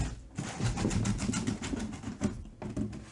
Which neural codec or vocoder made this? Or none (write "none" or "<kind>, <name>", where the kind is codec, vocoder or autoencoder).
none